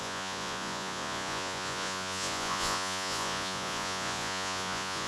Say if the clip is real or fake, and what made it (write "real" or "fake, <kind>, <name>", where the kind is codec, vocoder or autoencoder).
fake, vocoder, Vocos